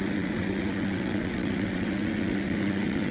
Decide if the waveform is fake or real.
fake